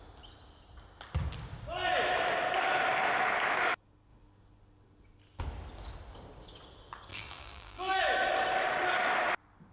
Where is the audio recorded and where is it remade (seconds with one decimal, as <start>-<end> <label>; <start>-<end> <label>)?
0.0-7.1 recorded; 7.1-8.0 remade; 8.0-9.7 recorded